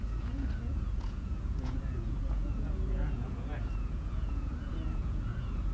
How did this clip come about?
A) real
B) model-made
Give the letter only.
B